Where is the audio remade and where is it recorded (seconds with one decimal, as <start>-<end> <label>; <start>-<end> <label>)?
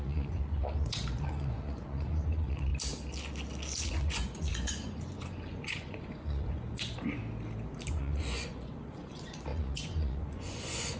0.0-2.7 remade; 2.7-3.9 recorded; 3.9-7.2 remade; 7.2-7.9 recorded; 7.9-11.0 remade